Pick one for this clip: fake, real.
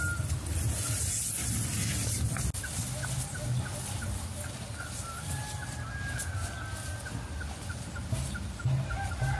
real